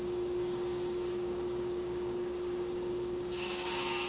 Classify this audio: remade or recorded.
remade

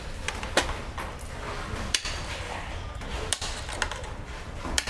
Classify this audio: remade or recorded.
recorded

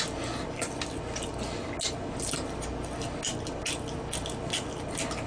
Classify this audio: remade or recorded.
recorded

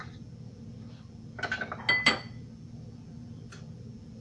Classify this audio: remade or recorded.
recorded